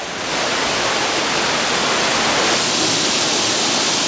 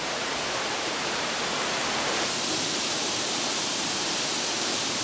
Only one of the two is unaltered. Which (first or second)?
first